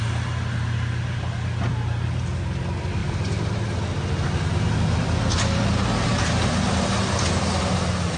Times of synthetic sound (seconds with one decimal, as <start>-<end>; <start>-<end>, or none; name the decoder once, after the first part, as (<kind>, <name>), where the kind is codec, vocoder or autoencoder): none